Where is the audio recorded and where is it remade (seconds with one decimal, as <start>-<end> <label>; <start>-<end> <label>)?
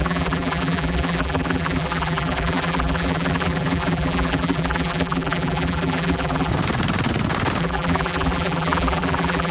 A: 0.0-6.5 remade; 6.5-7.6 recorded; 7.6-9.5 remade